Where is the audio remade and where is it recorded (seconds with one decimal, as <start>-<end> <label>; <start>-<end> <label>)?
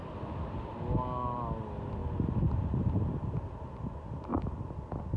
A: 0.0-5.2 recorded